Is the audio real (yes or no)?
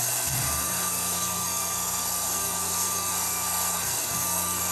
no